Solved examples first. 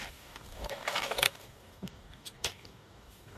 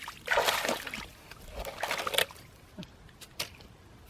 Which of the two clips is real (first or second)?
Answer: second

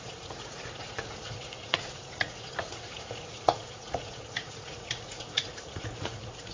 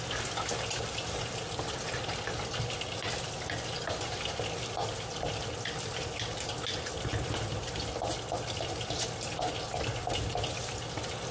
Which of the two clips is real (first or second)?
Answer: second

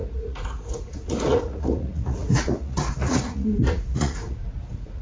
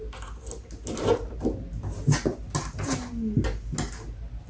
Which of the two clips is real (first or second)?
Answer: second